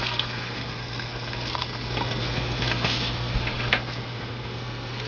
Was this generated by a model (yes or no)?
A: yes